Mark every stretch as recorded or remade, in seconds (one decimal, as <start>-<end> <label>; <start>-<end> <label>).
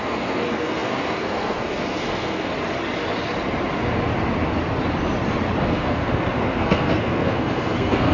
0.0-2.5 remade; 2.5-5.6 recorded; 5.6-8.1 remade